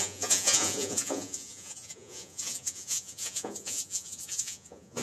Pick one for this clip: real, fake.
fake